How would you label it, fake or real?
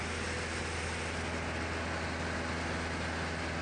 real